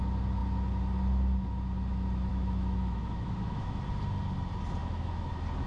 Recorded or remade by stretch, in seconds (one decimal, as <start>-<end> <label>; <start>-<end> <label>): 0.0-2.3 recorded; 2.3-3.8 remade; 3.8-4.8 recorded; 4.8-5.3 remade; 5.3-5.7 recorded